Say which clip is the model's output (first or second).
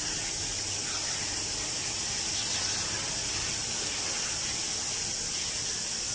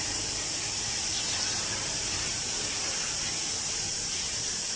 second